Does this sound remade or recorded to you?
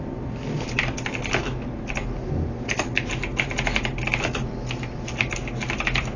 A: recorded